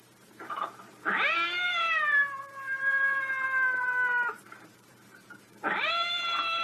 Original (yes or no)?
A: no